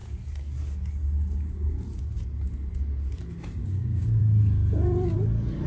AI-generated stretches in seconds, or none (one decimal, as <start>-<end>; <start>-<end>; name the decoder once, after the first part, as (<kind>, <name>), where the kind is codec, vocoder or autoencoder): 3.6-4.2 (codec, DAC)